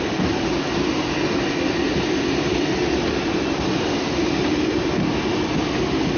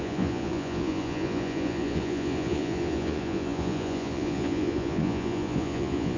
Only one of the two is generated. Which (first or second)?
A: second